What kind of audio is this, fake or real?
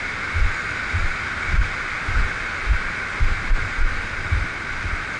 real